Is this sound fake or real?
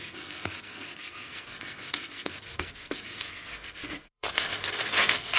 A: fake